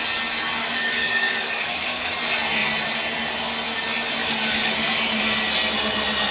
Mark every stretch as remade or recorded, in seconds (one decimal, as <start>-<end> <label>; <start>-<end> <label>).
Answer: 0.0-0.6 recorded; 0.6-2.1 remade; 2.1-4.2 recorded; 4.2-5.2 remade; 5.2-6.3 recorded